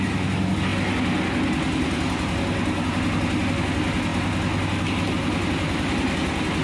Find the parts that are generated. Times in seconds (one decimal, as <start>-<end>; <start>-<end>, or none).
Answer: none